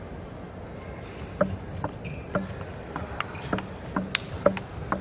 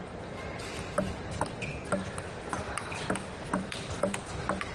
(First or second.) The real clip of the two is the first